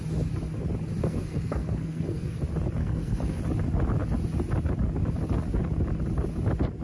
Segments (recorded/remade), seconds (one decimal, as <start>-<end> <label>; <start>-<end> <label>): 0.0-1.0 recorded; 1.0-2.4 remade; 2.4-2.8 recorded; 2.8-3.4 remade; 3.4-6.8 recorded